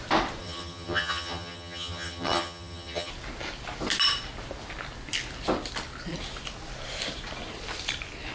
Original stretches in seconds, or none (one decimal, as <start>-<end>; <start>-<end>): 0.0-0.4; 3.1-8.3